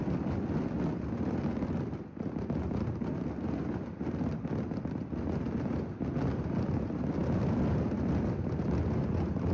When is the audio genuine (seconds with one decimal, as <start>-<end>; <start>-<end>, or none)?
0.0-9.5